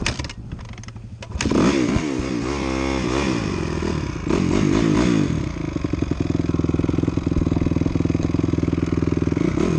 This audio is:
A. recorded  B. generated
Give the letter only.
A